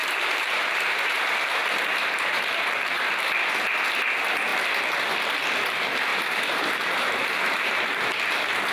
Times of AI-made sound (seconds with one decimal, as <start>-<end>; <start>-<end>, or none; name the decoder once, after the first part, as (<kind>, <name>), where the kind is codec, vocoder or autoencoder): 0.0-3.0 (vocoder, BigVGAN v2); 6.1-8.0